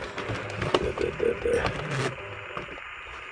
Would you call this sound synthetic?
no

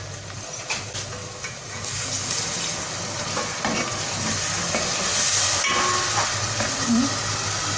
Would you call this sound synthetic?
no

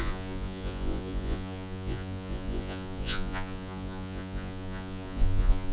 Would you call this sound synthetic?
yes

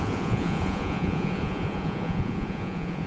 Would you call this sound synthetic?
yes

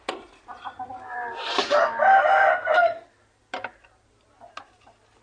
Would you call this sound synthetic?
no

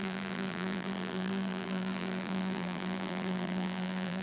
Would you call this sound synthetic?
yes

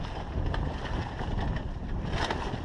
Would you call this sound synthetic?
no